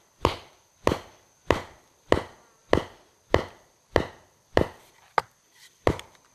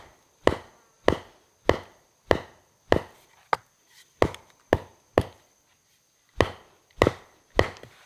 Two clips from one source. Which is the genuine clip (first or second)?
second